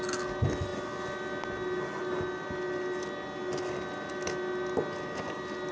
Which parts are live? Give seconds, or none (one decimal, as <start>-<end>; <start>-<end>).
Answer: 0.0-5.7